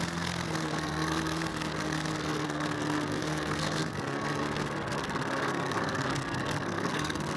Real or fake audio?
fake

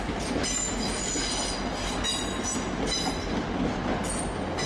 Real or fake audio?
real